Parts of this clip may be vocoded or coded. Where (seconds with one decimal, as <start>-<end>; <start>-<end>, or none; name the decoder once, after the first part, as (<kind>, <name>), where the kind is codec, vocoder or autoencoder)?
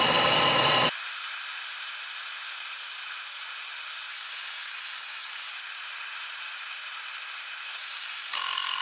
4.1-5.5 (codec, DAC); 7.8-8.8